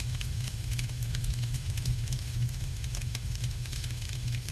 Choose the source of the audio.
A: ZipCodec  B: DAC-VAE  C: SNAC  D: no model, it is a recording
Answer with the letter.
B